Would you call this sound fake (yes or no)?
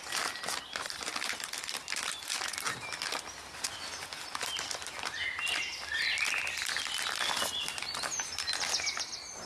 no